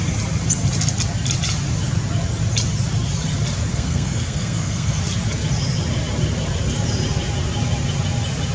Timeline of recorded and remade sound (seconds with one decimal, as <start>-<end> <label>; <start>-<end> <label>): 0.0-3.7 recorded; 3.7-5.0 remade; 5.0-8.5 recorded